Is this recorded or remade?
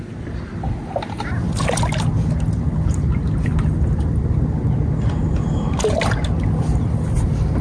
recorded